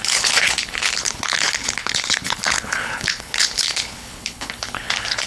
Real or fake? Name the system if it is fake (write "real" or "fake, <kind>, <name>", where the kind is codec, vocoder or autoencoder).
fake, codec, HILCodec